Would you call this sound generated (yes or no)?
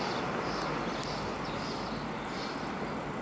no